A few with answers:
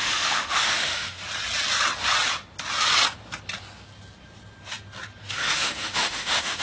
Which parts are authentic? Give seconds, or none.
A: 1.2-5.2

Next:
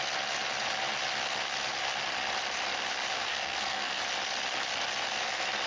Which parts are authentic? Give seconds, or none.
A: 0.0-3.3; 4.0-5.7

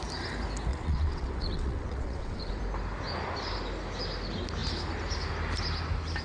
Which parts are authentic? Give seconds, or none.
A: 0.0-0.7; 2.5-6.2

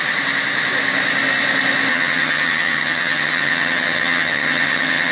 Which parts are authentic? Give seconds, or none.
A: 0.0-1.9

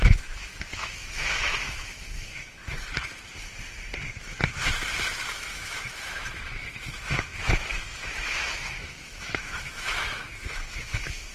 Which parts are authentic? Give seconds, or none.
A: 2.6-5.3

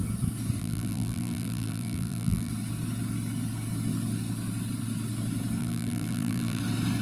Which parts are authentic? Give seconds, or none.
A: 0.0-0.6; 2.5-5.6; 6.6-7.0

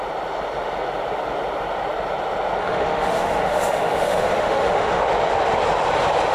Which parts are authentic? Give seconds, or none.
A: 0.0-2.6; 5.0-6.3